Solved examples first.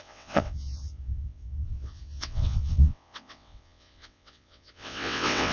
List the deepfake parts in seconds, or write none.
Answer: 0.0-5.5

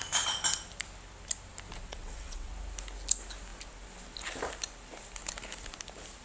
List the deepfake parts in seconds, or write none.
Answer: 1.9-2.5

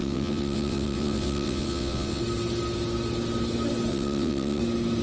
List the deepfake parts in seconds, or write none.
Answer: 0.0-2.2; 3.9-4.6

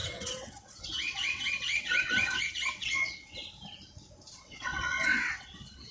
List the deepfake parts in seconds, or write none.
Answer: 0.0-3.4; 4.3-5.9